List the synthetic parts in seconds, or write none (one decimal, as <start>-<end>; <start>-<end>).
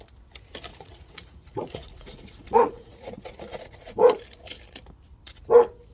0.7-4.2